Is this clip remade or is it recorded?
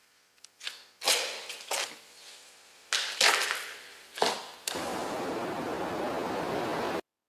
recorded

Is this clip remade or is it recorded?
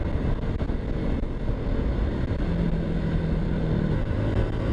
recorded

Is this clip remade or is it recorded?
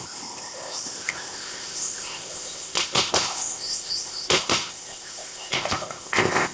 remade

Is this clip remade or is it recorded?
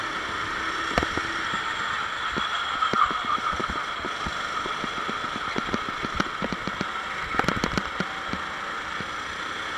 recorded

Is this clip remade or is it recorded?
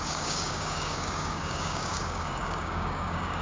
remade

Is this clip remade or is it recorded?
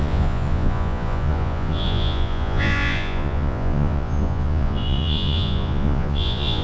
remade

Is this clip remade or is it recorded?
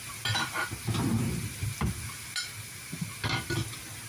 recorded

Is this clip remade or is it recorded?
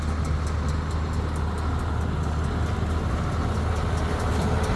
recorded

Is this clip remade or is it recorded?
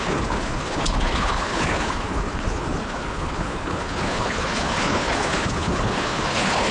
remade